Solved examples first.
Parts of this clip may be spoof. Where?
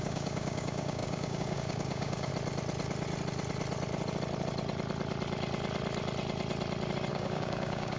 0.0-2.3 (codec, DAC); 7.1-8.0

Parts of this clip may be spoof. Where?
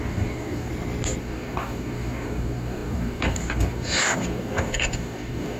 0.0-0.7 (codec, DAC); 1.2-5.6